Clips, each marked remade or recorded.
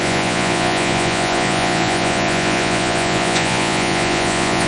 remade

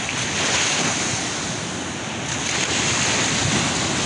recorded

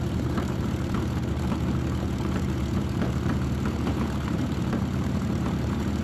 remade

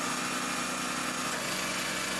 remade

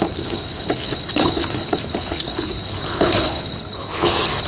remade